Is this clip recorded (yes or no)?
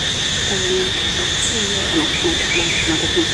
yes